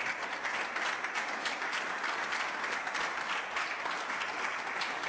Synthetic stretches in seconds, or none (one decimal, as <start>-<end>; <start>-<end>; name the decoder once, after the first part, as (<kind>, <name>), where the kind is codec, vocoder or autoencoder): none